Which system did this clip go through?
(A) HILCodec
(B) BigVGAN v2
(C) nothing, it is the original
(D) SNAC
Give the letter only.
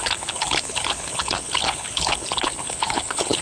A